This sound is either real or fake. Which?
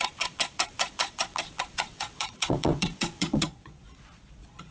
fake